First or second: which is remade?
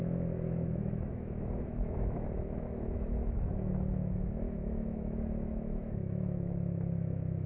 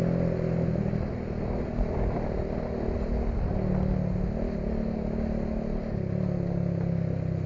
first